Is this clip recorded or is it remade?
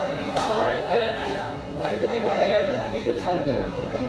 remade